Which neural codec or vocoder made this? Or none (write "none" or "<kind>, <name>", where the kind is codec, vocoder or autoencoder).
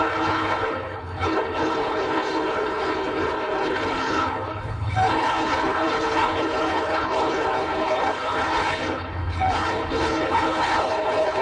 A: codec, HILCodec